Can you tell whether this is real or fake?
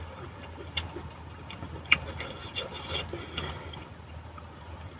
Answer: fake